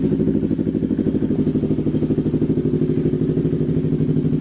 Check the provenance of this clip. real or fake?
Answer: real